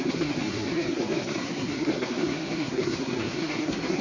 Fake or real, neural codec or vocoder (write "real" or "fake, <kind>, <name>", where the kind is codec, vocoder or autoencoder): fake, codec, SNAC